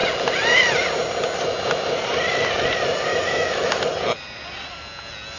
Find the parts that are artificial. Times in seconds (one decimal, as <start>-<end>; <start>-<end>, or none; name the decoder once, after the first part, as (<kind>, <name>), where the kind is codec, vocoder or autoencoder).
3.1-3.8 (autoencoder, DAC-VAE)